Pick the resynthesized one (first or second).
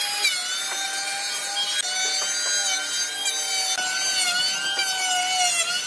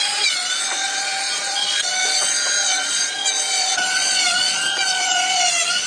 second